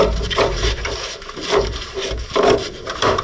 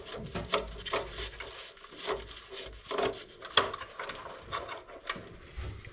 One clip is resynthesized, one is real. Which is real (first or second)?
second